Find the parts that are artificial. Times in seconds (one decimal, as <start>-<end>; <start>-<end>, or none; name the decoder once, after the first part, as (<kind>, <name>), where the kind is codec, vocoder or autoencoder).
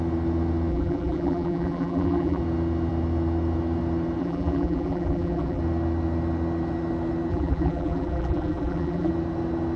0.7-2.4 (vocoder, BigVGAN v2); 4.2-5.6; 7.3-9.1